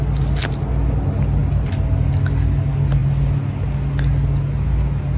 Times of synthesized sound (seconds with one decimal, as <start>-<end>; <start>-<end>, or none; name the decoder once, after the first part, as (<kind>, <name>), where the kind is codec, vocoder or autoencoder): none